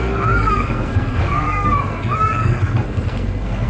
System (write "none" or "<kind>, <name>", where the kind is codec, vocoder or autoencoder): codec, SNAC